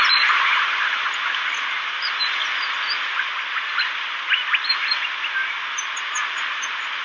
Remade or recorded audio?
recorded